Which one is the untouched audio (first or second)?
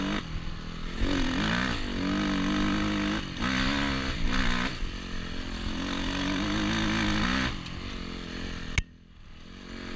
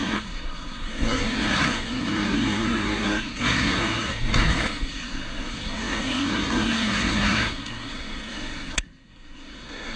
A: first